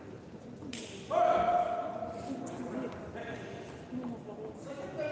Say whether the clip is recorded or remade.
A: recorded